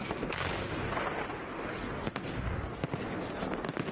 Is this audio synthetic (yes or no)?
no